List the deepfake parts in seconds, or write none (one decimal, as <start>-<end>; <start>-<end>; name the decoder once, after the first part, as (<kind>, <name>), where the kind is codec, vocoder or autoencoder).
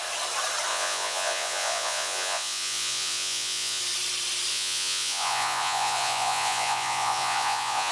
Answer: 0.7-3.8 (vocoder, Vocos); 4.5-7.9